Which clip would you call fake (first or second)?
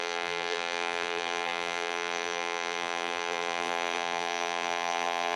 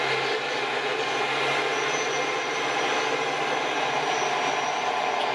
first